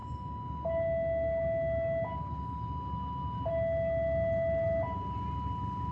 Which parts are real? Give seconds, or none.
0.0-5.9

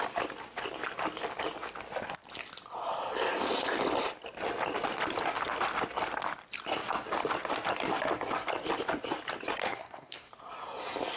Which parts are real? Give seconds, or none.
0.0-9.6; 10.3-11.2

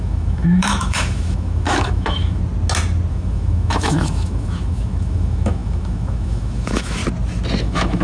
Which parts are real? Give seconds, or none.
2.4-3.1; 7.0-7.6

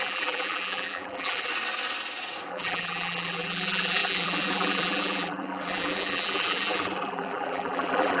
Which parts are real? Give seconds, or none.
1.5-2.5

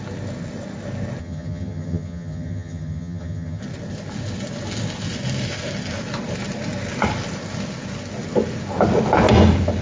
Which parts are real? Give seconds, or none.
0.0-1.2; 3.6-9.8